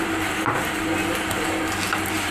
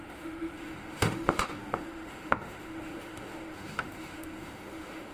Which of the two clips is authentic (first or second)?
first